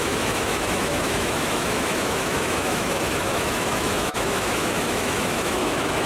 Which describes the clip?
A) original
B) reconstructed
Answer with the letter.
B